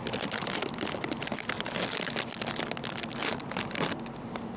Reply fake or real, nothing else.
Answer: real